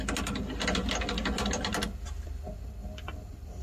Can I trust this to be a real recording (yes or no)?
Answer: yes